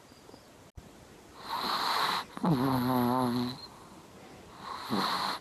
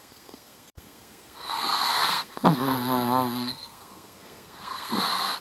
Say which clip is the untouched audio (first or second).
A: first